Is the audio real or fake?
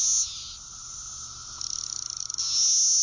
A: real